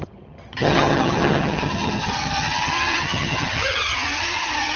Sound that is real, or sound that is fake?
fake